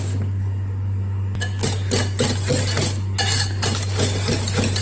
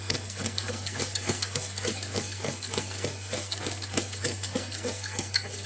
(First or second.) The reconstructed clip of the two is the second